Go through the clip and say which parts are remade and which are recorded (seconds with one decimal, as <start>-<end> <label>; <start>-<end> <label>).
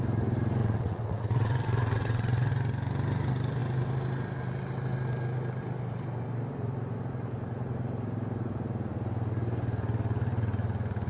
0.0-0.6 recorded; 0.6-2.5 remade; 2.5-11.1 recorded